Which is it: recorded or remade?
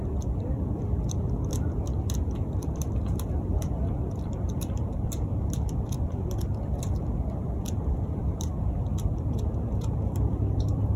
remade